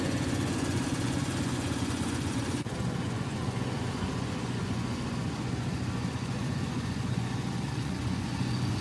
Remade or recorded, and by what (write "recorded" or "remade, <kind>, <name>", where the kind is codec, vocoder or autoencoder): remade, vocoder, Vocos